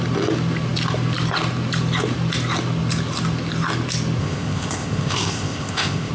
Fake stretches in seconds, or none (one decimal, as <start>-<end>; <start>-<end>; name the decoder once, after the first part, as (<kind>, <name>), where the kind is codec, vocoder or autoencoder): 4.2-6.1 (codec, ZipCodec)